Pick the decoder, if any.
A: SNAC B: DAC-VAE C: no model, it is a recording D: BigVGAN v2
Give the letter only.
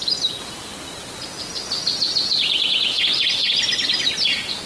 C